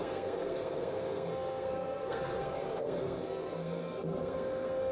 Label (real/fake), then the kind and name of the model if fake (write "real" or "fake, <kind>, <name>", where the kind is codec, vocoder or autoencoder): fake, codec, SNAC